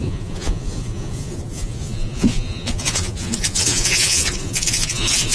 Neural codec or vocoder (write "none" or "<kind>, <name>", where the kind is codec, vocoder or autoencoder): vocoder, Vocos